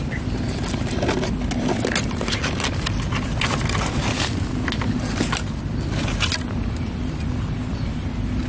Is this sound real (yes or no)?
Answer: yes